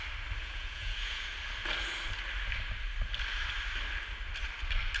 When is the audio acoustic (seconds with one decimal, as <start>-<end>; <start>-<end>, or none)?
0.0-0.4; 1.3-5.0